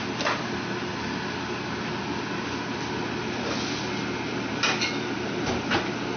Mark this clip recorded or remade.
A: recorded